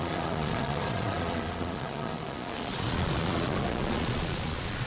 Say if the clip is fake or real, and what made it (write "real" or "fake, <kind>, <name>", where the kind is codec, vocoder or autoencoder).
fake, vocoder, Vocos